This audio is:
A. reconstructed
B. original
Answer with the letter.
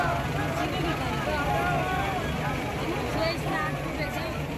B